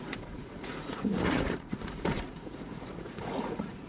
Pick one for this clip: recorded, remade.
remade